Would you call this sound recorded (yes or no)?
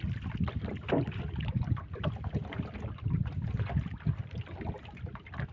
yes